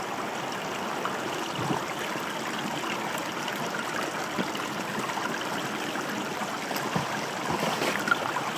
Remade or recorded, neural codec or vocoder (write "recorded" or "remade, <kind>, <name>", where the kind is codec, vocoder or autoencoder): recorded